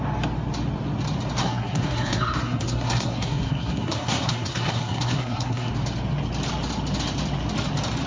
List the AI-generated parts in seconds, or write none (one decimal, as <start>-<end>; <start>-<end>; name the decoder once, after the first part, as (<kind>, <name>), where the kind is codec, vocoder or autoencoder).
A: 1.4-5.7 (codec, SNAC)